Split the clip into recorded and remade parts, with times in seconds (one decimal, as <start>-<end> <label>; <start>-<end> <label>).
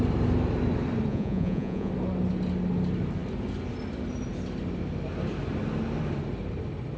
0.0-1.1 recorded; 1.1-1.9 remade; 1.9-7.0 recorded